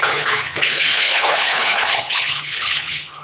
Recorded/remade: remade